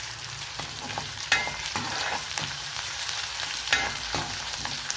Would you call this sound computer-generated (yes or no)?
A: yes